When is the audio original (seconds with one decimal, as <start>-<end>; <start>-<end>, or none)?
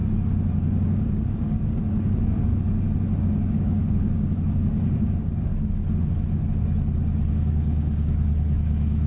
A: 2.5-3.2; 5.5-7.3